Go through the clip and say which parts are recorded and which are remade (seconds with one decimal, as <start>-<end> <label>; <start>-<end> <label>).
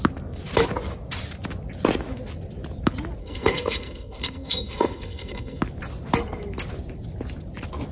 0.0-3.2 recorded; 3.2-5.6 remade; 5.6-7.9 recorded